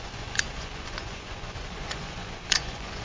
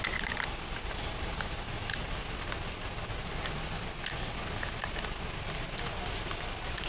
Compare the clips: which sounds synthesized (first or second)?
first